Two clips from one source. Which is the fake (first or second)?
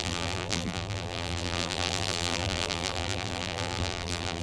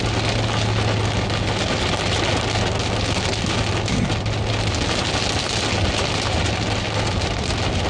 first